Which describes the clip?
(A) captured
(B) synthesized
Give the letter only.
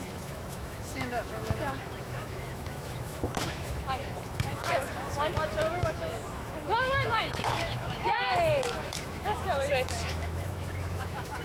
B